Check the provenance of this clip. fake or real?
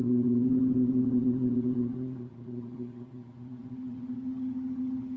fake